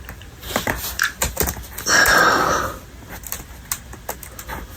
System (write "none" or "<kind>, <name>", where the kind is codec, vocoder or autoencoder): none